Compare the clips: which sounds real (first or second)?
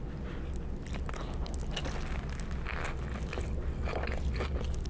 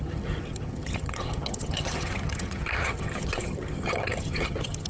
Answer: first